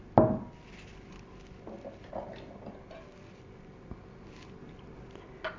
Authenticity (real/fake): real